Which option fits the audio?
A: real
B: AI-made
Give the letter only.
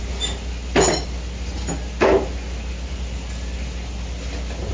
A